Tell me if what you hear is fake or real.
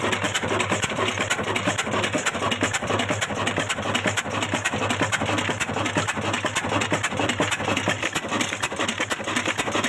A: fake